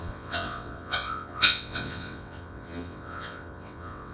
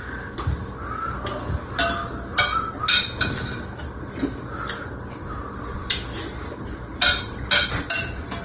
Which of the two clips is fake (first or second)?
first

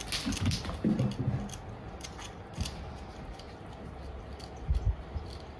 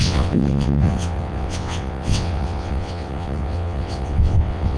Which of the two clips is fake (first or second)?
second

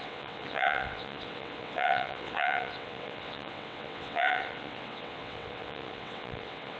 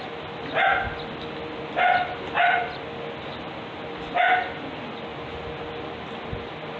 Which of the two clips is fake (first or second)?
first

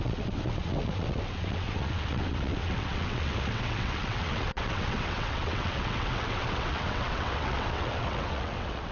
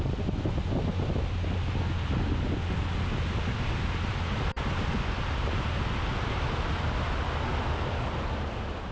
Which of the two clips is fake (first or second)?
first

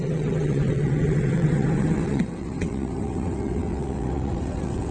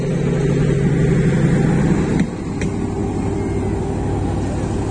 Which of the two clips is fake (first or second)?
first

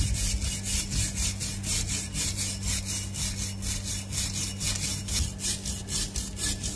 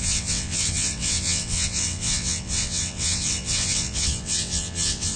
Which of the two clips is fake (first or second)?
second